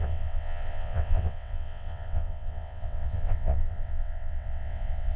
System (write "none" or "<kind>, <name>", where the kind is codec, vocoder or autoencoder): vocoder, WaveNeXt